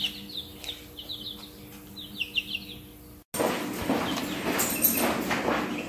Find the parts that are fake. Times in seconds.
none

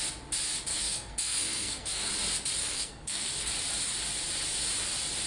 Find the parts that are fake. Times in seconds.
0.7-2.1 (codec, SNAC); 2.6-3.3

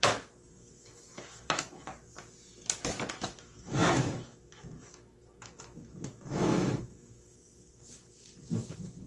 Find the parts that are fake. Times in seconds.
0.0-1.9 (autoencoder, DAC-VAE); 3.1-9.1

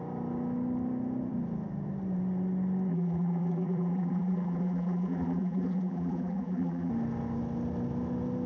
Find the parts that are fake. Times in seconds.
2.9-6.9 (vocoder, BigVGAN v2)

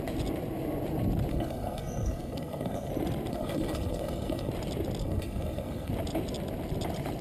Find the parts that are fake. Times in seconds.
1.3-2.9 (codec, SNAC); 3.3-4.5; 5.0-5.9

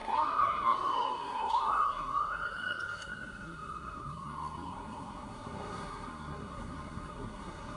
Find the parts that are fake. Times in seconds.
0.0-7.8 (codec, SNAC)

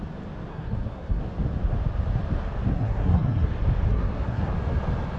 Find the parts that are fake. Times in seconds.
0.5-1.2 (codec, SNAC); 2.7-3.5; 3.9-4.5

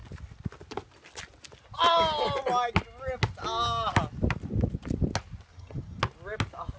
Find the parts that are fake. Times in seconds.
5.5-6.0 (vocoder, HiFi-GAN)